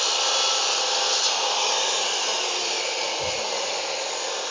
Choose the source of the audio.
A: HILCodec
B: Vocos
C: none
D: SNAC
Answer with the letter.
C